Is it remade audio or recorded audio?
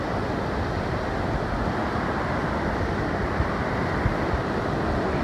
recorded